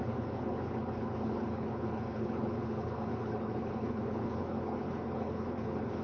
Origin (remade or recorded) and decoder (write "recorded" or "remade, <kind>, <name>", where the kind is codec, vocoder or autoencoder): remade, codec, HILCodec